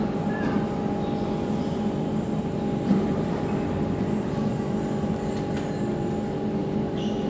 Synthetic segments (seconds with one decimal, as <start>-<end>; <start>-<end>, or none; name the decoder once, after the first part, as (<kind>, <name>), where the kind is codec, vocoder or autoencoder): none